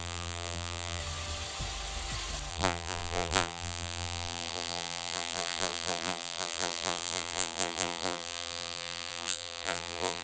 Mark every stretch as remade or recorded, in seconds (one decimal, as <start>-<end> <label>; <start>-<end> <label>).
0.0-1.0 remade; 1.0-2.5 recorded; 2.5-10.2 remade